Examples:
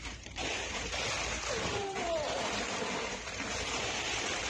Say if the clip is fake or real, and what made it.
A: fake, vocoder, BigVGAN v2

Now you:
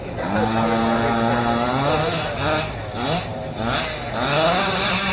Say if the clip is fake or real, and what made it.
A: real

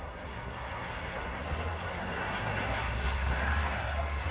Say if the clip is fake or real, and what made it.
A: fake, codec, SNAC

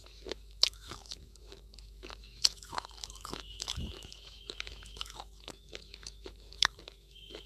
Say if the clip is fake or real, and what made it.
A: fake, autoencoder, DAC-VAE